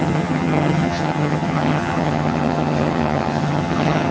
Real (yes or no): no